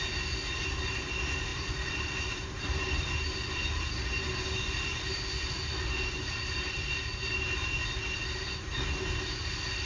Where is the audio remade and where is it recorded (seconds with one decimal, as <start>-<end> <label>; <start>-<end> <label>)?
0.0-1.5 recorded; 1.5-5.2 remade; 5.2-9.9 recorded